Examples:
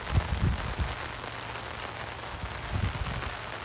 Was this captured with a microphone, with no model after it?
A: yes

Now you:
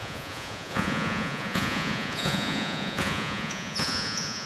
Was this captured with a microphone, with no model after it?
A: no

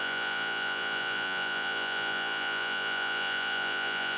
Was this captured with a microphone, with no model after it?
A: no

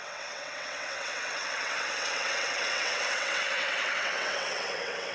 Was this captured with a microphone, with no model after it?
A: no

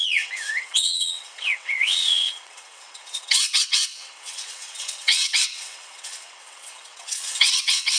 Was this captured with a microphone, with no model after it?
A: no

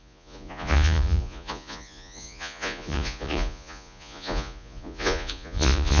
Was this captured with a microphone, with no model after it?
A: no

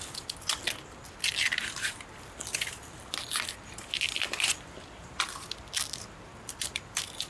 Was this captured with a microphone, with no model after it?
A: no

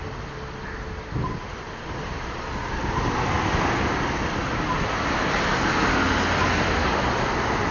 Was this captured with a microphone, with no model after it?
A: yes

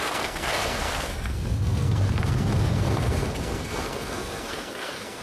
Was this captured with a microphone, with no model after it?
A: no